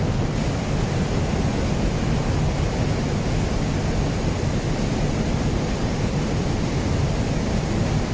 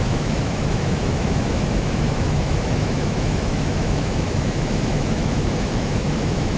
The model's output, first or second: second